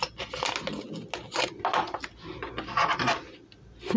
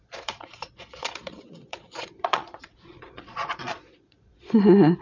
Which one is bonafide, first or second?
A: first